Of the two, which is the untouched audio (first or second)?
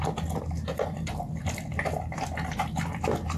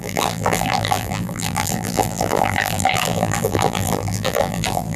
first